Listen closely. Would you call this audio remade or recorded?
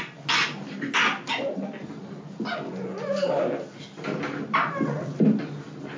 recorded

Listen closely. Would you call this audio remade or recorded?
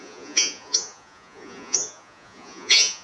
remade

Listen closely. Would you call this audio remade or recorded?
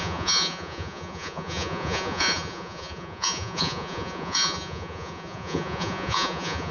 remade